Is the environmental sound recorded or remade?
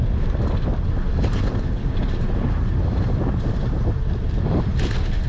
recorded